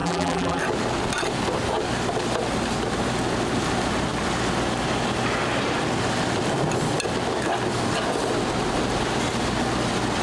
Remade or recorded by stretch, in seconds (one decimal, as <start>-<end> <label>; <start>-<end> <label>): 0.0-0.6 remade; 0.6-10.2 recorded